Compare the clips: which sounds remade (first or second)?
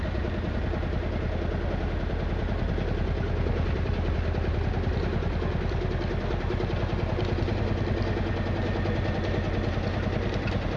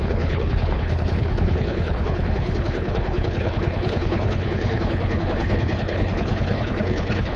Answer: second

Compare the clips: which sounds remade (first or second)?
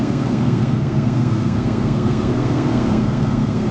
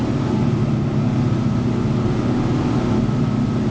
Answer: first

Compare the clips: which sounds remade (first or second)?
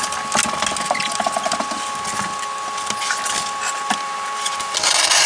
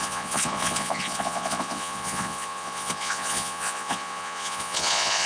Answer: second